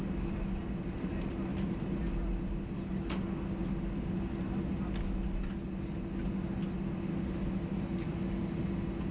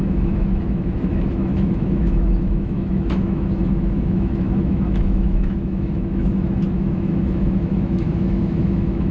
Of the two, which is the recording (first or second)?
first